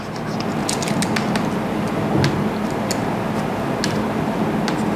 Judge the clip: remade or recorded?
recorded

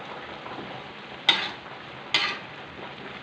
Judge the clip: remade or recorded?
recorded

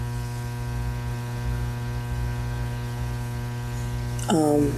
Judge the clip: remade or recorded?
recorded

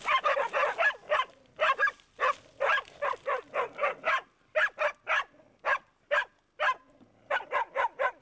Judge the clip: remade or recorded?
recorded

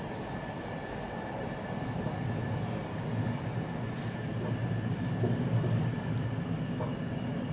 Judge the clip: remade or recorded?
recorded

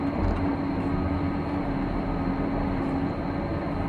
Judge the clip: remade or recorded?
recorded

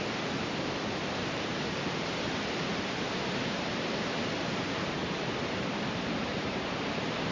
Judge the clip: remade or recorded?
remade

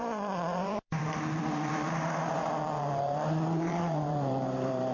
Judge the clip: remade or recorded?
remade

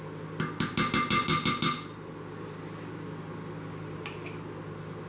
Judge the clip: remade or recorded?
recorded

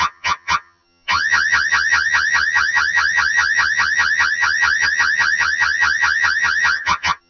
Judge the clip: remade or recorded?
remade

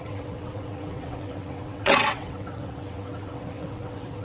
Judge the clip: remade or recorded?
remade